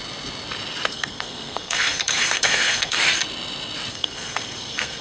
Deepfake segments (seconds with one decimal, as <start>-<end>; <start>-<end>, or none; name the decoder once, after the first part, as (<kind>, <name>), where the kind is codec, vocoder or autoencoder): 0.9-3.0 (codec, SNAC); 3.9-5.0